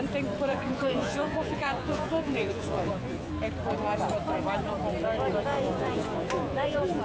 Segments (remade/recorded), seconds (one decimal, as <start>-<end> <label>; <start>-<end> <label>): 0.0-0.5 recorded; 0.5-3.3 remade; 3.3-5.5 recorded; 5.5-7.0 remade